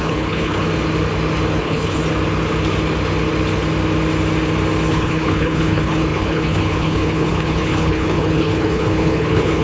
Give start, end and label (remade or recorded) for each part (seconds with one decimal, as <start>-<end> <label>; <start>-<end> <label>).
0.0-0.7 remade; 0.7-1.6 recorded; 1.6-2.0 remade; 2.0-4.9 recorded; 4.9-9.6 remade